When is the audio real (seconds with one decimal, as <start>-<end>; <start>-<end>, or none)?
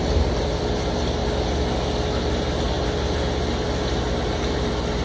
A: 0.0-5.0